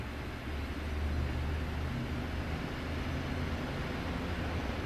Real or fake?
real